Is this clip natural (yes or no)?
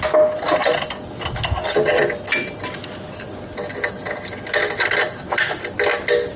yes